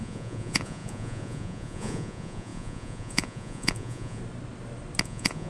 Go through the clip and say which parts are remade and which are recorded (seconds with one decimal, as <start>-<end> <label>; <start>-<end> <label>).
0.0-4.2 remade; 4.2-5.0 recorded; 5.0-5.5 remade